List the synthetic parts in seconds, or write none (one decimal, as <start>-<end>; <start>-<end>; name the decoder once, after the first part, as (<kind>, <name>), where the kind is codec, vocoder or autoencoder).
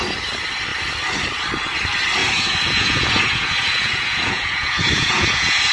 2.2-5.7 (vocoder, Vocos)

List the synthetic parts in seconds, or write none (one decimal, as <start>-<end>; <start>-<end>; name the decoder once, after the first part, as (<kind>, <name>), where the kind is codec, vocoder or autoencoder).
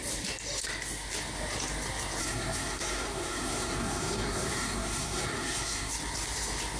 2.2-5.9 (codec, SNAC)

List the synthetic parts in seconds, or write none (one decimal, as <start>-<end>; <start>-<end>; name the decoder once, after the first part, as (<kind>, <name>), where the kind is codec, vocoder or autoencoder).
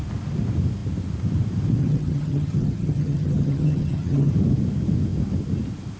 1.8-4.3 (vocoder, HiFi-GAN)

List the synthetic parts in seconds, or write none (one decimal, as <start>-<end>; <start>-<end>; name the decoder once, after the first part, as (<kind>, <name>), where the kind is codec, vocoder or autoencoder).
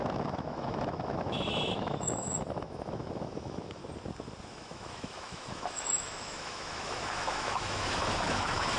0.0-3.8 (autoencoder, DAC-VAE); 4.4-8.8